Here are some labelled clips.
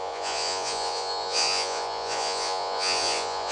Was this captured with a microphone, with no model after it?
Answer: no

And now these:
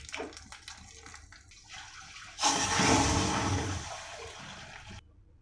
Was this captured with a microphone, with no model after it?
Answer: yes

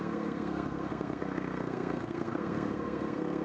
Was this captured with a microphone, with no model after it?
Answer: no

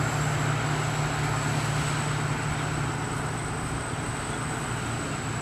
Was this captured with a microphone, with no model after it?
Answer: yes